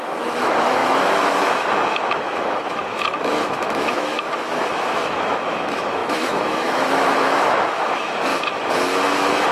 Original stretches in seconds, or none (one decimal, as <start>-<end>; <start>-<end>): 8.3-9.5